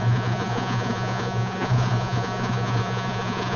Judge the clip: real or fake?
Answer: fake